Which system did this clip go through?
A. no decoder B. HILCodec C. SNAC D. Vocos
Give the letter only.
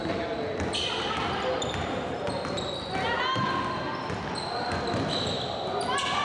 A